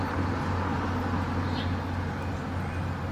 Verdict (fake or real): real